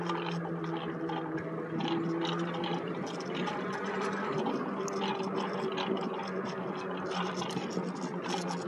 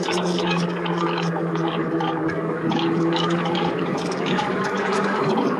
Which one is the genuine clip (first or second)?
first